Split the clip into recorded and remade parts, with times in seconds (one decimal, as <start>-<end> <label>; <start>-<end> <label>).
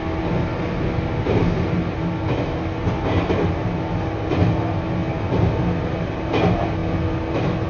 0.0-7.7 recorded